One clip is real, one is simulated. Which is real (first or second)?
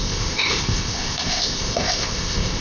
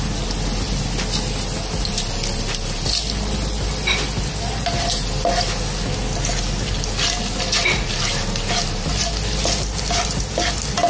second